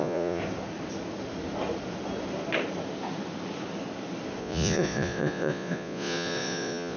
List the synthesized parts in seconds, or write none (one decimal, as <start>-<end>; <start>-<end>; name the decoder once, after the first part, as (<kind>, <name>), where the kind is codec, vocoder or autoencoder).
0.0-0.4 (vocoder, Vocos); 4.4-7.0

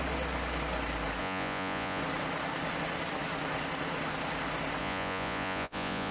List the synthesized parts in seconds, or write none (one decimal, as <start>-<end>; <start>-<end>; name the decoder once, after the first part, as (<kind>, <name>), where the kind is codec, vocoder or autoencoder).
1.2-2.0 (vocoder, Vocos); 4.8-6.1

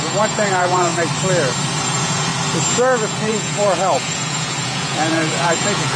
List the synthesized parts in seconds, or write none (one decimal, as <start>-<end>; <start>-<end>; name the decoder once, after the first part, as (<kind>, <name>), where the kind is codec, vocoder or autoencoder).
0.0-0.9 (vocoder, Vocos); 1.8-2.3; 3.1-6.0

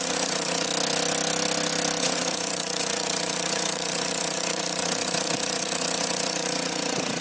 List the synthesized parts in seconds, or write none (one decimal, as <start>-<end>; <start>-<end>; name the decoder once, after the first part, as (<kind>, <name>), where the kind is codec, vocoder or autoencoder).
0.0-0.7 (vocoder, Vocos); 2.0-7.2